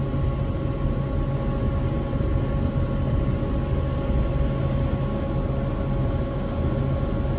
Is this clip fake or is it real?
real